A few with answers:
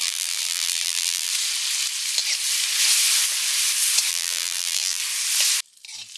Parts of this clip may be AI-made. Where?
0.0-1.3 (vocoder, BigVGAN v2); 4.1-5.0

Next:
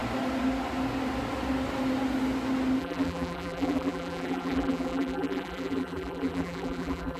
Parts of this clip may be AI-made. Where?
2.8-7.2 (vocoder, BigVGAN v2)

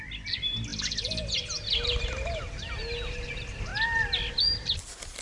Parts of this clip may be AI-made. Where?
0.7-2.4 (vocoder, BigVGAN v2)

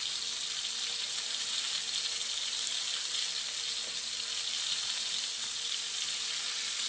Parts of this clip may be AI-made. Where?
none

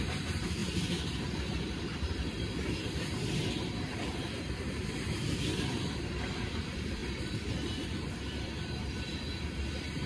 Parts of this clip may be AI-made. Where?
0.0-10.1 (vocoder, BigVGAN v2)

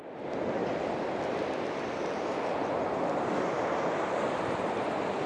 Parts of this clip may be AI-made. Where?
0.6-2.6 (vocoder, BigVGAN v2)

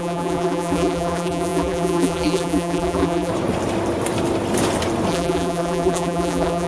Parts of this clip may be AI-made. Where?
0.0-3.3 (vocoder, BigVGAN v2); 5.1-6.7

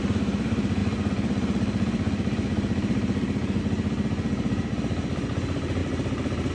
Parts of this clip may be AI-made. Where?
0.8-3.6 (vocoder, BigVGAN v2); 5.8-6.5